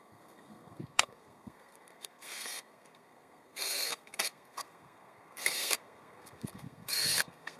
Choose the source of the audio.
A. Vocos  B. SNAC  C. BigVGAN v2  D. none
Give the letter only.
B